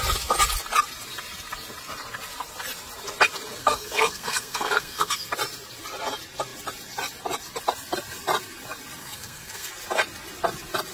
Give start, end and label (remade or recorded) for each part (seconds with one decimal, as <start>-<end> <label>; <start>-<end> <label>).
0.0-3.6 recorded; 3.6-5.3 remade; 5.3-9.0 recorded; 9.0-9.7 remade; 9.7-10.9 recorded